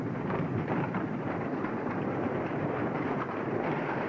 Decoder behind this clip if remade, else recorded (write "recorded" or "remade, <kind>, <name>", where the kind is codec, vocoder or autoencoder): remade, vocoder, BigVGAN v2